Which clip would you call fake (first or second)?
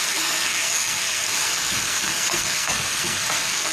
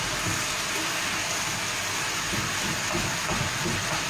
first